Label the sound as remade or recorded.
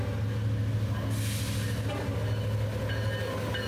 recorded